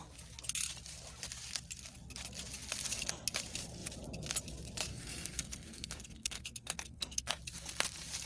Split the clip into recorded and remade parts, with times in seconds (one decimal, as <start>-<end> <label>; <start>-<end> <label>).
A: 0.0-4.9 recorded; 4.9-7.4 remade; 7.4-8.3 recorded